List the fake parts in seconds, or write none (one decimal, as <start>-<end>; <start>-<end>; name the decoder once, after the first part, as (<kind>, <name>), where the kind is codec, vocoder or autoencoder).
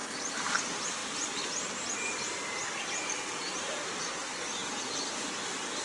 0.0-0.6 (vocoder, BigVGAN v2); 1.0-3.3